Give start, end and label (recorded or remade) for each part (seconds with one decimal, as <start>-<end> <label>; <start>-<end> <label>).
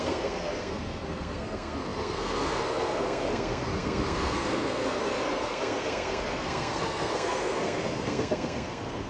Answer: 0.0-9.1 remade